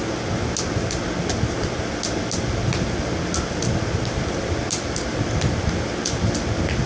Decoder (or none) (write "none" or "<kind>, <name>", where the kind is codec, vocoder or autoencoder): none